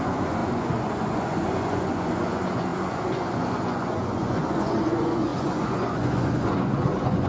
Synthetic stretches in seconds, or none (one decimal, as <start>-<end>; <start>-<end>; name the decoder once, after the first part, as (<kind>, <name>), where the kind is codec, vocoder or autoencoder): 0.0-7.3 (vocoder, Vocos)